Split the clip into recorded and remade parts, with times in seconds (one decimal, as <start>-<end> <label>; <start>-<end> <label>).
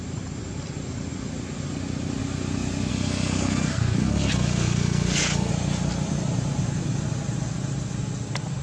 0.0-2.9 recorded; 2.9-5.5 remade; 5.5-8.6 recorded